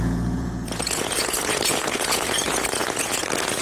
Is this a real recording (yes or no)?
no